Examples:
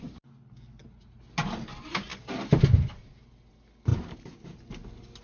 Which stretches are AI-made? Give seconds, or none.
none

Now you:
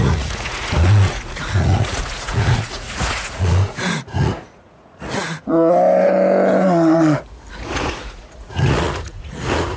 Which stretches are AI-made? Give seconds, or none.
0.0-5.5 (vocoder, Vocos); 7.5-9.8

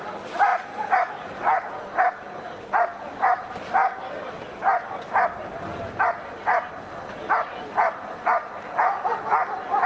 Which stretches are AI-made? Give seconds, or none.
none

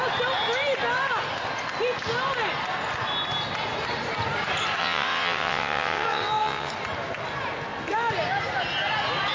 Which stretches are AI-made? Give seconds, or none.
4.8-6.7 (vocoder, WaveNeXt)

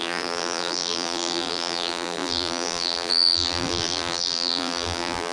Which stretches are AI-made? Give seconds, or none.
0.0-5.3 (vocoder, BigVGAN v2)